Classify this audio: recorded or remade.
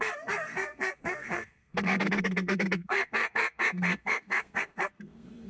remade